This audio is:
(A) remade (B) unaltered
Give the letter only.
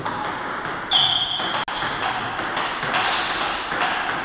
B